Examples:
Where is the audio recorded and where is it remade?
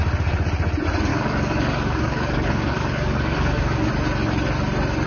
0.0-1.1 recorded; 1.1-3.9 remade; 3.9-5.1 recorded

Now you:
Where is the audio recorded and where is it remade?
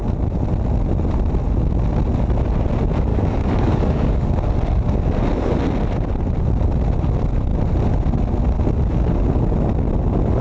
0.0-3.1 recorded; 3.1-4.3 remade; 4.3-10.4 recorded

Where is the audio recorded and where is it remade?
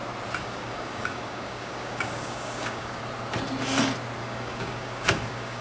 0.0-0.4 recorded; 0.4-3.0 remade; 3.0-4.2 recorded; 4.2-5.6 remade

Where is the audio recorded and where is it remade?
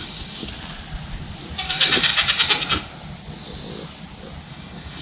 0.0-0.4 remade; 0.4-1.7 recorded; 1.7-2.1 remade; 2.1-4.5 recorded; 4.5-5.0 remade